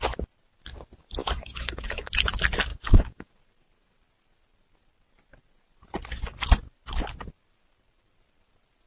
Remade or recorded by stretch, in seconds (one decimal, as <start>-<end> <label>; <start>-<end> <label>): 0.0-1.2 recorded; 1.2-2.1 remade; 2.1-2.7 recorded; 2.7-3.3 remade; 3.3-8.9 recorded